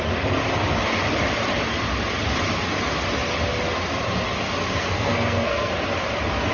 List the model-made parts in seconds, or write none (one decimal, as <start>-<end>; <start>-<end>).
4.8-5.7